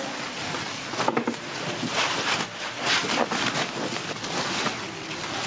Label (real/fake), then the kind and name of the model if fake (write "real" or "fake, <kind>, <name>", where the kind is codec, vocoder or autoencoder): real